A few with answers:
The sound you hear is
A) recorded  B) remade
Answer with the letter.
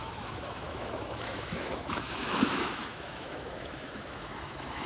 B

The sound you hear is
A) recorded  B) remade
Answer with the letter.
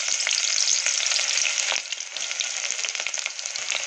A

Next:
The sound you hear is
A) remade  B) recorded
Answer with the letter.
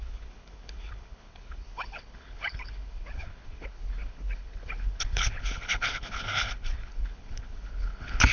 A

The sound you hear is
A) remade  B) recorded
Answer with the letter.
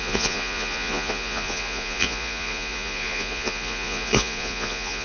A